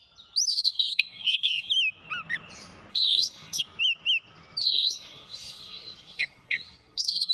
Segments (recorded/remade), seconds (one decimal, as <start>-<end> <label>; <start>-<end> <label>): 0.0-0.5 recorded; 0.5-1.7 remade; 1.7-2.9 recorded; 2.9-3.6 remade; 3.6-4.6 recorded; 4.6-7.3 remade

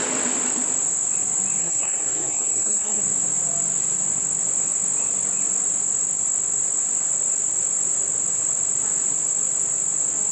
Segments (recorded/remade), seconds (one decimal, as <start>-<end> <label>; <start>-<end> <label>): 0.0-1.6 recorded; 1.6-3.0 remade; 3.0-10.3 recorded

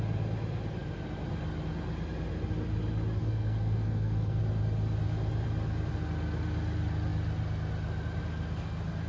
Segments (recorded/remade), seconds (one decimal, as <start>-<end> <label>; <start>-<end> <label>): 0.0-3.2 recorded; 3.2-4.4 remade; 4.4-9.1 recorded

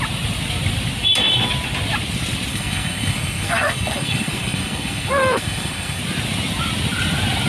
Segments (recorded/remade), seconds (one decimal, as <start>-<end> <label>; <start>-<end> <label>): 0.0-2.5 recorded; 2.5-6.0 remade; 6.0-7.5 recorded